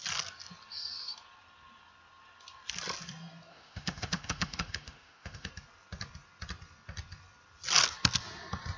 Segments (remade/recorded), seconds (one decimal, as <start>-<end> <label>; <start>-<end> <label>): 0.0-3.5 recorded; 3.5-5.5 remade; 5.5-8.8 recorded